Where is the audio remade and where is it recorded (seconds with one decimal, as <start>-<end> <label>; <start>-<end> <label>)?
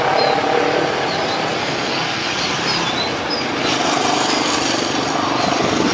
0.0-1.6 recorded; 1.6-2.3 remade; 2.3-5.9 recorded